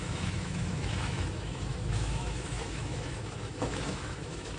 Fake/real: fake